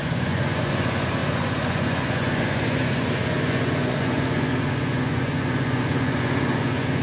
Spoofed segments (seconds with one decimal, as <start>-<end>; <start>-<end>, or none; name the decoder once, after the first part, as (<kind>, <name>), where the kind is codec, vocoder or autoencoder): 0.0-7.0 (vocoder, Vocos)